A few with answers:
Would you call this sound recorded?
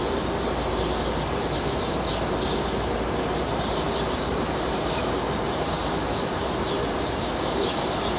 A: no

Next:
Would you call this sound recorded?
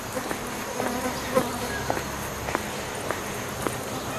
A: yes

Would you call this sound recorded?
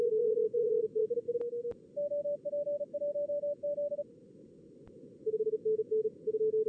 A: yes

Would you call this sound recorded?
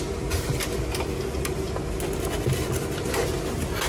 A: yes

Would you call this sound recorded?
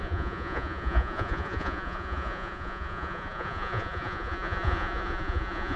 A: no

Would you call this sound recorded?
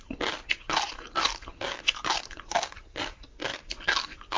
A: yes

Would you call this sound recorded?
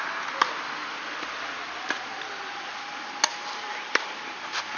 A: yes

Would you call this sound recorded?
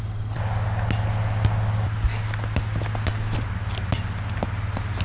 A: yes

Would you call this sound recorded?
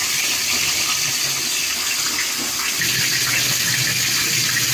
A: yes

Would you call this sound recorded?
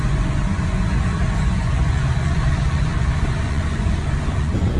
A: no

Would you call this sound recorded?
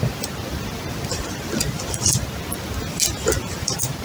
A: yes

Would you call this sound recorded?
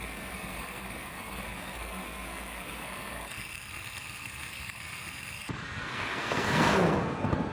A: no